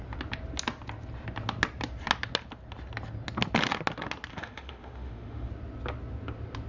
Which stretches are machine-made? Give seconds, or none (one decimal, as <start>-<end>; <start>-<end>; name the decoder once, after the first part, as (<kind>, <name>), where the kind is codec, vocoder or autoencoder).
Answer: 4.3-5.5 (autoencoder, DAC-VAE)